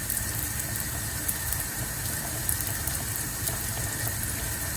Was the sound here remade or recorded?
remade